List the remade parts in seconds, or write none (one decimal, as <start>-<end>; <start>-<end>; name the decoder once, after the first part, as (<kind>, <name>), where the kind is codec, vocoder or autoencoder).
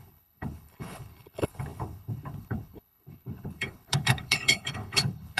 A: 0.0-5.4 (codec, HILCodec)